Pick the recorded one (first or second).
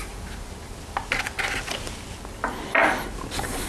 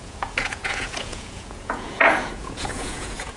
first